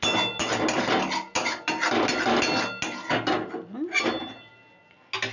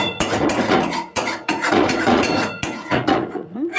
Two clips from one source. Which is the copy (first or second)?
second